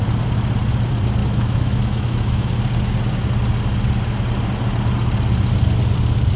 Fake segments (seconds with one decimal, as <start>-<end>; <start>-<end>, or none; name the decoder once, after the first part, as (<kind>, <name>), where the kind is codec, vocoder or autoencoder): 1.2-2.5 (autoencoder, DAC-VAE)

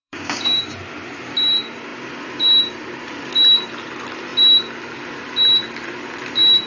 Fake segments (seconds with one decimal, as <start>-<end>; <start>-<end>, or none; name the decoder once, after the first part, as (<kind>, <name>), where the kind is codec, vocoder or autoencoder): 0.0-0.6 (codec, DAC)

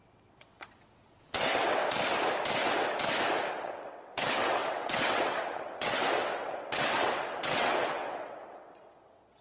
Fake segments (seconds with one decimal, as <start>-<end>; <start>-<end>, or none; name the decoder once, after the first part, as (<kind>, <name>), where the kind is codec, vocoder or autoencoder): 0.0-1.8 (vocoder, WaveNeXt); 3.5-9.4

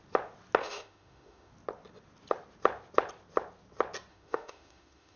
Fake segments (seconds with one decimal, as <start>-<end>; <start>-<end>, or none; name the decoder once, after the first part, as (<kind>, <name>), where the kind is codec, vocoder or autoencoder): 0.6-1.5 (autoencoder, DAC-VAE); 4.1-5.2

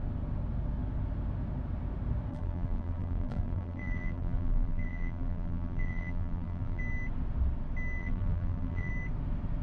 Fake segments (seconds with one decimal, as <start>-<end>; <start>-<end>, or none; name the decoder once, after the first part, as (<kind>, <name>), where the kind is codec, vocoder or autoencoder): 2.3-6.8 (vocoder, BigVGAN v2); 8.0-8.9

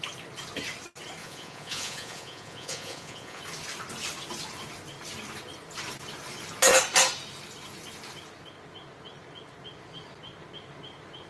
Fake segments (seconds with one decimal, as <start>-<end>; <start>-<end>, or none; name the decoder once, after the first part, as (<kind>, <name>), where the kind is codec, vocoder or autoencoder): 1.2-3.4 (vocoder, Vocos)

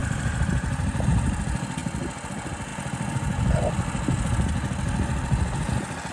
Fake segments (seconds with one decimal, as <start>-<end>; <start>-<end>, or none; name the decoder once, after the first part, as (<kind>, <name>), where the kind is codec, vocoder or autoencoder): 0.0-1.4 (vocoder, BigVGAN v2)

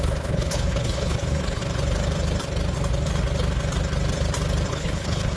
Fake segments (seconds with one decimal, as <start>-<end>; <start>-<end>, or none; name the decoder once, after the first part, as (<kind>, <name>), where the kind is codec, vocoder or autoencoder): 0.0-1.6 (codec, HILCodec); 4.7-5.4